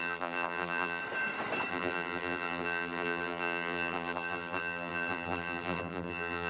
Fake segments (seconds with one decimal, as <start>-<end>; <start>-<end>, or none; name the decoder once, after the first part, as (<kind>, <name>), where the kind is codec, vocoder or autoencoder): 0.0-1.0 (vocoder, BigVGAN v2); 1.7-6.5